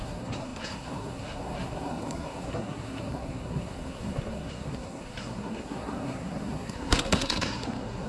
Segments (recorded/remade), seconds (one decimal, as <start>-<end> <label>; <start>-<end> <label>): 0.0-8.1 remade